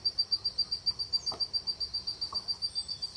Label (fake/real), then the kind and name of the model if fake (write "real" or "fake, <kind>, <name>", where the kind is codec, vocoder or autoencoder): real